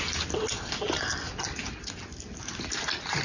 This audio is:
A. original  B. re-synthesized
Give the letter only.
A